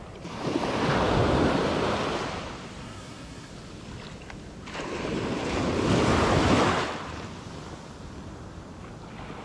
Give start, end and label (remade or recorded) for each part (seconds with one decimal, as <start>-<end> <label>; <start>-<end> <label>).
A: 0.0-2.8 recorded; 2.8-3.5 remade; 3.5-9.4 recorded